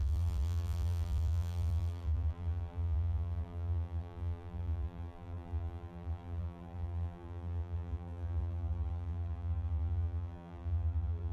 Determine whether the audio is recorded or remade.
remade